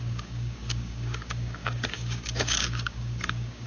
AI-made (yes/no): yes